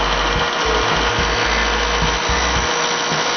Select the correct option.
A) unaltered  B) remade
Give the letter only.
A